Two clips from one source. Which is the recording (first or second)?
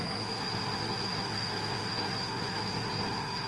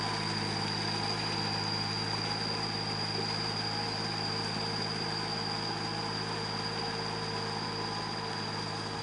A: second